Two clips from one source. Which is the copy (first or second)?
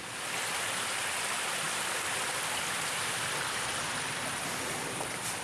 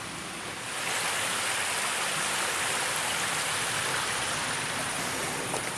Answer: first